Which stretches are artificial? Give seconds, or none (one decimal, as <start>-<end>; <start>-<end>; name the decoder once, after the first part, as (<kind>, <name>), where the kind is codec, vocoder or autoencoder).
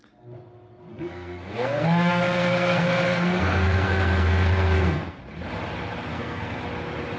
0.9-5.2 (codec, SNAC); 6.1-6.6